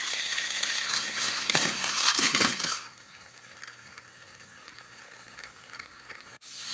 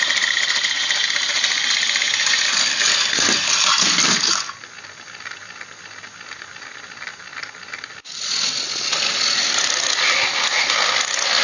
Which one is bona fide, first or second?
second